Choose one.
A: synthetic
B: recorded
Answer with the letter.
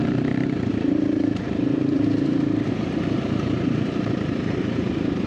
A